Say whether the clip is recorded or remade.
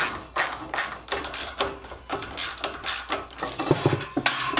recorded